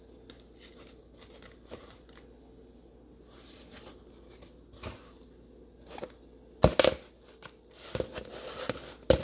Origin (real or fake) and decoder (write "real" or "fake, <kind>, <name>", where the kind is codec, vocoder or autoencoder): real